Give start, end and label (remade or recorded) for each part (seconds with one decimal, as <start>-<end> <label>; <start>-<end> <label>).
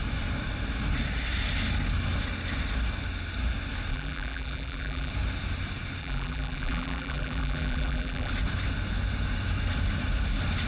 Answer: 0.0-3.9 recorded; 3.9-5.1 remade; 5.1-6.0 recorded; 6.0-8.3 remade; 8.3-10.7 recorded